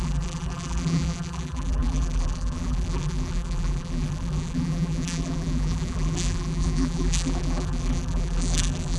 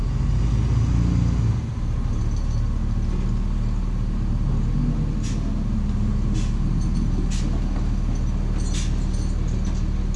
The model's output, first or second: first